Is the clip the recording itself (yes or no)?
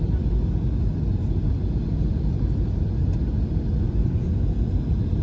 yes